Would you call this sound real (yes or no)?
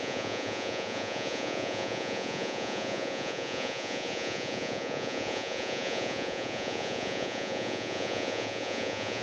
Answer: no